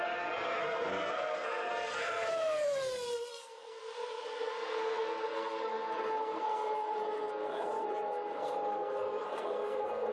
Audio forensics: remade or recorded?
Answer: remade